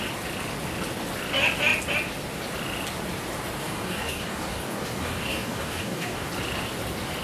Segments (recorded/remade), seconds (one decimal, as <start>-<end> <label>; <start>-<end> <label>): 0.0-3.6 recorded; 3.6-6.3 remade; 6.3-7.2 recorded

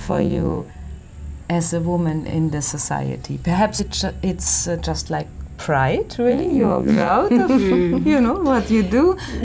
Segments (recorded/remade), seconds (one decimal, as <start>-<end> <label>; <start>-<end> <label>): 0.0-0.7 remade; 0.7-6.3 recorded; 6.3-7.1 remade; 7.1-9.4 recorded

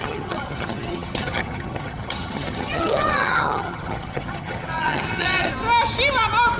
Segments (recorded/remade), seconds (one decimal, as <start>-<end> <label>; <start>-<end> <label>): 0.0-5.5 remade; 5.5-6.6 recorded

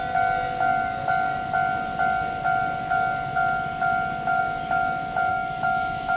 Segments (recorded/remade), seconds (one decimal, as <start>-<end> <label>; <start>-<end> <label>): 0.0-5.3 recorded; 5.3-6.2 remade

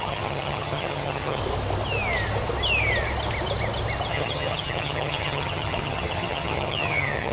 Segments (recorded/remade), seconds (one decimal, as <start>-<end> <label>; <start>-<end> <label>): 0.0-1.4 remade; 1.4-4.1 recorded; 4.1-7.3 remade

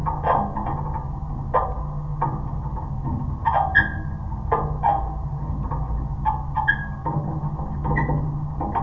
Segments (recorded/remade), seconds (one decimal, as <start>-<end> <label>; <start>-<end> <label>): 0.0-8.8 recorded

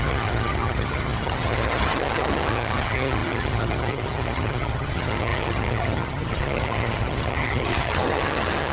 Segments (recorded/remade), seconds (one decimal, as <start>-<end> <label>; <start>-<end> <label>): 0.0-8.7 remade

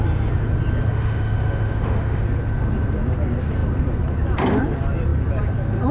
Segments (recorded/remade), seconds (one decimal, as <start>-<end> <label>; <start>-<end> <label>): 0.0-0.9 recorded; 0.9-2.2 remade; 2.2-5.9 recorded